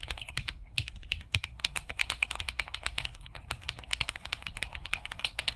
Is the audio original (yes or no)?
no